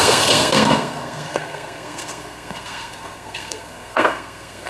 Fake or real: fake